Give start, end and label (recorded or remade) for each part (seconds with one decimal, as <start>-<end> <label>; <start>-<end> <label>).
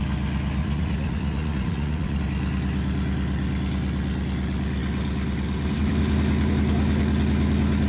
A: 0.0-0.6 recorded; 0.6-2.2 remade; 2.2-7.9 recorded